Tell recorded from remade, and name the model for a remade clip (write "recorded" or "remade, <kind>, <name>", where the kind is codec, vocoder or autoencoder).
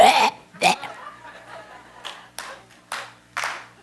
recorded